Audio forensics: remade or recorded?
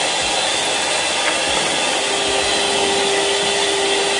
recorded